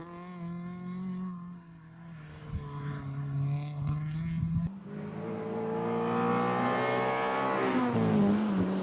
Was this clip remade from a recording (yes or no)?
no